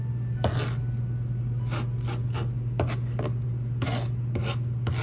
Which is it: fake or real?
real